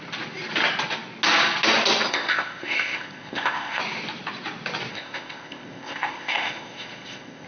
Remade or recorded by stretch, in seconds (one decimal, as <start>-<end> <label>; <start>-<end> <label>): 0.0-2.1 recorded; 2.1-3.8 remade; 3.8-4.9 recorded; 4.9-7.5 remade